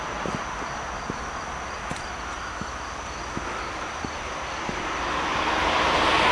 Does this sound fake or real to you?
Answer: real